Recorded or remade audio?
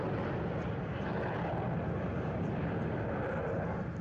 recorded